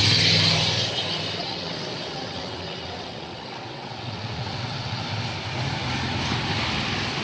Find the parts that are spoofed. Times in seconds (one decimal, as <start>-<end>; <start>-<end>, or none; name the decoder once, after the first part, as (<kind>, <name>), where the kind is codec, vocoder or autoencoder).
1.4-5.0 (vocoder, WaveNeXt)